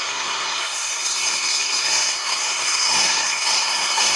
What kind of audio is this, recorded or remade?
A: remade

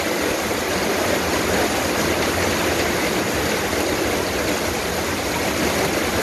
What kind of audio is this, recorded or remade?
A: recorded